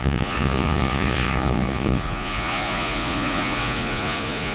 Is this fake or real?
fake